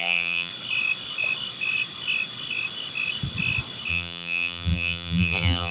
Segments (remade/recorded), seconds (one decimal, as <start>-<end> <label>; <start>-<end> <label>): 0.0-0.5 remade; 0.5-3.9 recorded; 3.9-5.7 remade

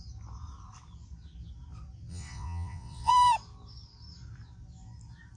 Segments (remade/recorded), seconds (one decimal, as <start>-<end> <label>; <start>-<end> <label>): 0.0-2.1 recorded; 2.1-3.1 remade; 3.1-5.4 recorded